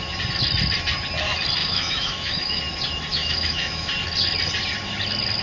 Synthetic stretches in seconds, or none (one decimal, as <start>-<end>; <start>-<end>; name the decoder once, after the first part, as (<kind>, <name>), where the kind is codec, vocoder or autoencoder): 1.6-2.6 (autoencoder, DAC-VAE); 3.1-3.9